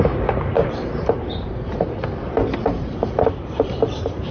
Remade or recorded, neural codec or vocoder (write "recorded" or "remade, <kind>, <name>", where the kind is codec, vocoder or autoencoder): remade, vocoder, BigVGAN v2